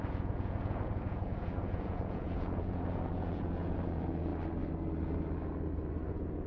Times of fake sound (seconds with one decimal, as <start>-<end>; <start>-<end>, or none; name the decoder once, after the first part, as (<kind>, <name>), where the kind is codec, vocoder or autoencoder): 0.0-4.3 (vocoder, Vocos); 6.1-6.5